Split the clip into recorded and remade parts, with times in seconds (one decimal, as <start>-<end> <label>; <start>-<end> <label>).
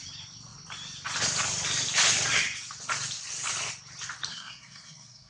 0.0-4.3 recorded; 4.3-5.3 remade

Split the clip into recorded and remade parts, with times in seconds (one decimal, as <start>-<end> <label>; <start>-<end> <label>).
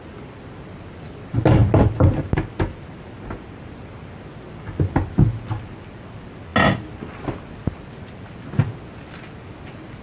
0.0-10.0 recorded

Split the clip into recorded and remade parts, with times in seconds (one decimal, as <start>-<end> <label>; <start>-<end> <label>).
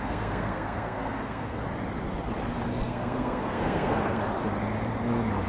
0.0-1.6 remade; 1.6-2.8 recorded; 2.8-4.2 remade; 4.2-5.5 recorded